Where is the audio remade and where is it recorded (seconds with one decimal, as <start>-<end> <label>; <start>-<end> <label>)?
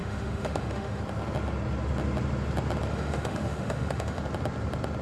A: 0.0-1.0 remade; 1.0-2.9 recorded; 2.9-4.2 remade; 4.2-5.0 recorded